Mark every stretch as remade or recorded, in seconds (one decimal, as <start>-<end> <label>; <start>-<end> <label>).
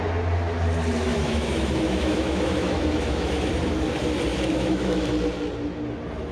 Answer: 0.0-1.1 recorded; 1.1-3.5 remade; 3.5-4.3 recorded; 4.3-5.1 remade; 5.1-6.3 recorded